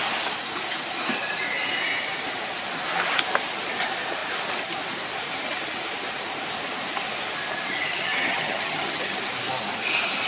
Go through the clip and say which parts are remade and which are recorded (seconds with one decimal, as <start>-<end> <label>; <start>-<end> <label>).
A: 0.0-7.9 recorded; 7.9-9.2 remade; 9.2-10.3 recorded

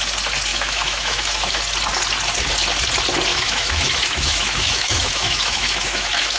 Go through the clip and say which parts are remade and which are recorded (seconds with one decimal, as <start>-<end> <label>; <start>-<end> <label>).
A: 0.0-0.5 recorded; 0.5-1.6 remade; 1.6-3.3 recorded; 3.3-6.4 remade

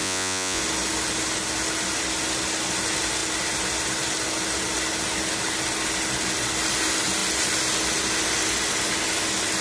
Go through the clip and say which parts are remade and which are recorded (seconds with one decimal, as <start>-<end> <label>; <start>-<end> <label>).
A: 0.0-0.6 remade; 0.6-9.6 recorded

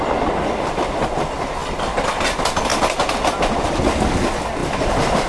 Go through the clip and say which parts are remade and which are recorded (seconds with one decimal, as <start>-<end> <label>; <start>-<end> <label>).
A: 0.0-1.6 recorded; 1.6-2.2 remade; 2.2-2.7 recorded; 2.7-4.1 remade; 4.1-4.6 recorded; 4.6-5.3 remade